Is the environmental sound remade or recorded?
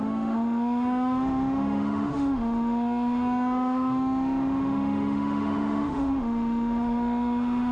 remade